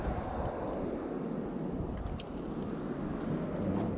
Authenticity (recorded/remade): recorded